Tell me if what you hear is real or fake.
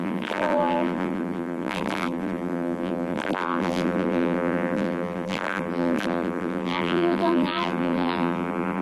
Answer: fake